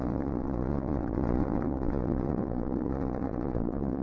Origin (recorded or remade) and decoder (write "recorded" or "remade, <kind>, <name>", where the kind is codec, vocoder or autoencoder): remade, vocoder, Vocos